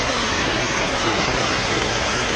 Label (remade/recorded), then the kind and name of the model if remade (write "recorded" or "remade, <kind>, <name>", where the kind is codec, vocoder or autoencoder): remade, codec, SNAC